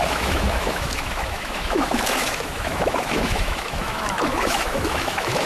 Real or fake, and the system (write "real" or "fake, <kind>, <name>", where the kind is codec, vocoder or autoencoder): fake, autoencoder, DAC-VAE